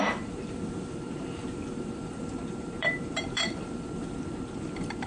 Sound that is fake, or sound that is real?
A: fake